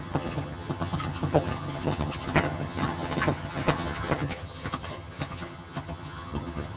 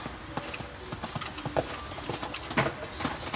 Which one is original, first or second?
second